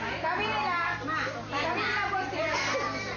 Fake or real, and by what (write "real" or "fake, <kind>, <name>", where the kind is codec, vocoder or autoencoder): real